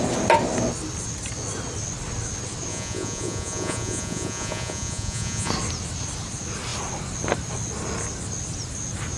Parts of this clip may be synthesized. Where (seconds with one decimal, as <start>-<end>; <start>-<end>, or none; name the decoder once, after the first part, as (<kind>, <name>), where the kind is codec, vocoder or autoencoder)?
2.7-5.5 (vocoder, Vocos)